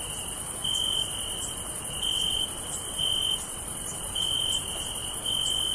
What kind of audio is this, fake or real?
real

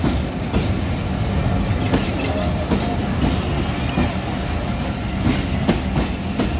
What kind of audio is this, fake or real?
real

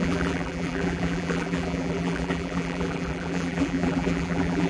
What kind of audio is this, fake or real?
fake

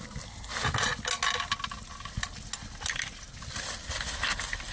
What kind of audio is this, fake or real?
real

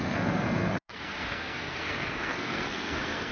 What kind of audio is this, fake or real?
fake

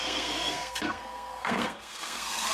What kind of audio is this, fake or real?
fake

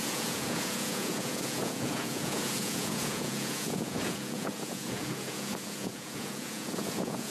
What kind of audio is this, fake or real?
fake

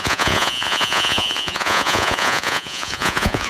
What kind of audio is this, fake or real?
fake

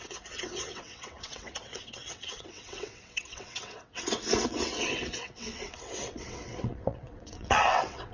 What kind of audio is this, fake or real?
fake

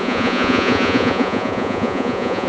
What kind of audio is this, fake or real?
fake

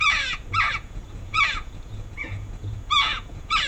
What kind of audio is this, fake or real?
fake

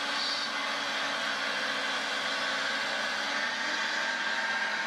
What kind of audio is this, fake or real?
real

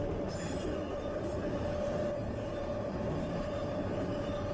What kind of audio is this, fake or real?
real